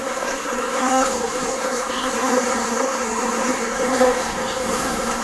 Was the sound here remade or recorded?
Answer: remade